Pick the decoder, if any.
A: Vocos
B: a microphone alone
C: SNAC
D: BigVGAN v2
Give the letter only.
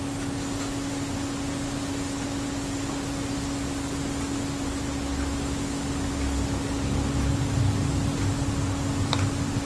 B